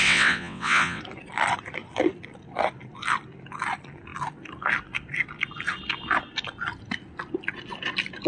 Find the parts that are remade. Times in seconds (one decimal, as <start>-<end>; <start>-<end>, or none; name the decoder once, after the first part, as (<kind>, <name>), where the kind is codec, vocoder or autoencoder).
0.0-1.0 (vocoder, WaveNeXt)